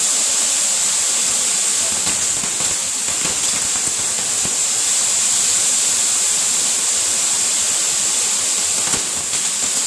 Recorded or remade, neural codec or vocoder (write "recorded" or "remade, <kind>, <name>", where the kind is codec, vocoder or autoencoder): recorded